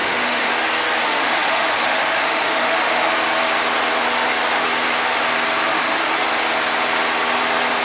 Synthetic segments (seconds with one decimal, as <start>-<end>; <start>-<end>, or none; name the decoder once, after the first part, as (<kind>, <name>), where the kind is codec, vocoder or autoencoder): 0.0-0.5 (autoencoder, DAC-VAE); 1.0-3.1; 5.7-6.2